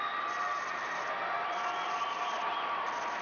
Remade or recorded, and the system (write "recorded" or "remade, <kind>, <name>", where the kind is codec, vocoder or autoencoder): recorded